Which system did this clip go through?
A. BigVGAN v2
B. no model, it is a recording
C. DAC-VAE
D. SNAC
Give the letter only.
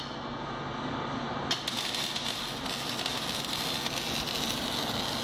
B